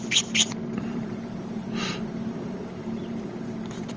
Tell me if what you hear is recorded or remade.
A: remade